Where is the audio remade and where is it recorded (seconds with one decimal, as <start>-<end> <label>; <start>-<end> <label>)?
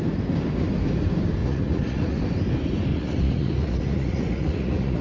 0.0-1.4 recorded; 1.4-2.2 remade; 2.2-2.9 recorded; 2.9-5.0 remade